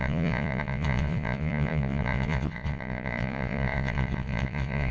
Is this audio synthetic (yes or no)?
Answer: yes